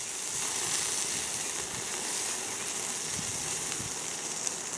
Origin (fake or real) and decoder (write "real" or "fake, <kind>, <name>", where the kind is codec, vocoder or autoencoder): real